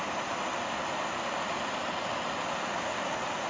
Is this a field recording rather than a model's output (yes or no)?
yes